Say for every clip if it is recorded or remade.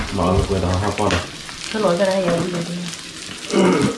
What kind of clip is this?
recorded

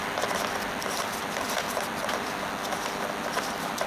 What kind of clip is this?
remade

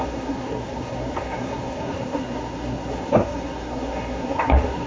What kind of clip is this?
remade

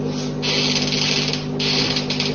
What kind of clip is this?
recorded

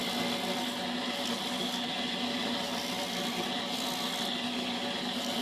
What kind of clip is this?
recorded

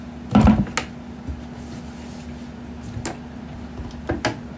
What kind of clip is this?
recorded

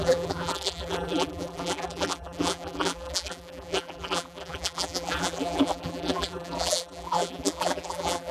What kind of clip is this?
remade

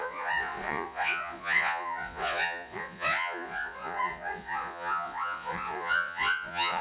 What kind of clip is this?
remade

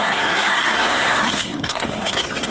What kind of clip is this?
remade